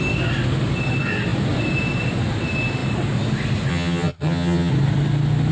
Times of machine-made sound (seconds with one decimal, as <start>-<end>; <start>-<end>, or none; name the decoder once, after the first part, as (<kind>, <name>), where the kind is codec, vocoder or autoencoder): 3.7-4.7 (vocoder, HiFi-GAN)